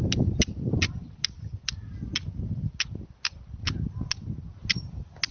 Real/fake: real